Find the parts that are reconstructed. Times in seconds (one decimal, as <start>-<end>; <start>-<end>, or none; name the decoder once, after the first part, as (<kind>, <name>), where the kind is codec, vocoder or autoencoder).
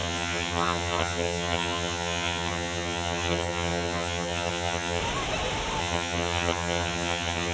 0.0-5.0 (vocoder, HiFi-GAN); 5.8-7.5